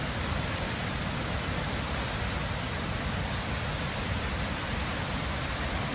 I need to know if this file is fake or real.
real